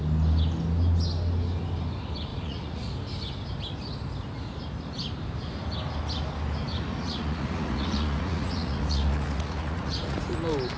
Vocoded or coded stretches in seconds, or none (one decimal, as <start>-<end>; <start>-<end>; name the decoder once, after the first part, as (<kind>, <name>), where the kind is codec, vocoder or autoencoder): 2.3-2.9 (vocoder, Vocos); 6.7-10.2